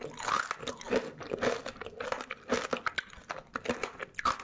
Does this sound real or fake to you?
real